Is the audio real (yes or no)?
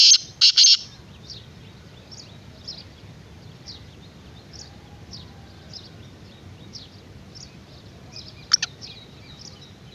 yes